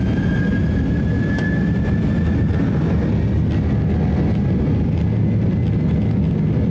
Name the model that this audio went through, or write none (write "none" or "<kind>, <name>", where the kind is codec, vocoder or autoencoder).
none